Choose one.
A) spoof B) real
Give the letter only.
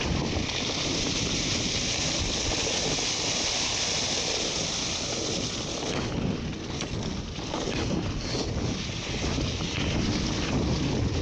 B